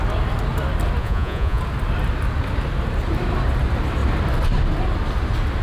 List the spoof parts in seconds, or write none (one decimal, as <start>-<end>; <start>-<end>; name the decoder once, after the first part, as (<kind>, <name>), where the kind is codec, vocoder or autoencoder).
1.0-1.6 (vocoder, Vocos)